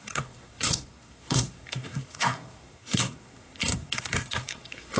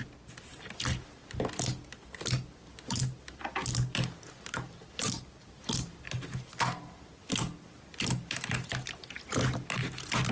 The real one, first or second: second